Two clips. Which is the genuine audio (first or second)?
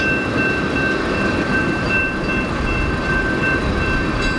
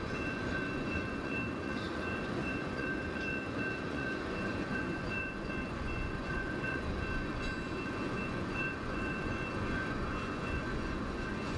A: first